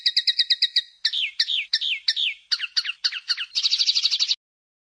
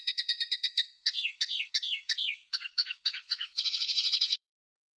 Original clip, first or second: first